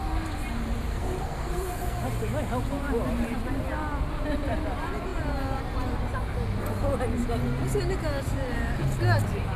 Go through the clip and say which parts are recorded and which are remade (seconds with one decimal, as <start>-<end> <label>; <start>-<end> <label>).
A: 0.0-0.9 recorded; 0.9-2.0 remade; 2.0-9.6 recorded